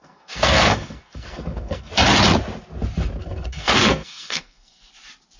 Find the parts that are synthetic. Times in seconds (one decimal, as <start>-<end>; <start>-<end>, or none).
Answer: 0.0-1.9; 3.2-4.9